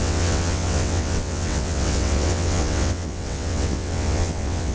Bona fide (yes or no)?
no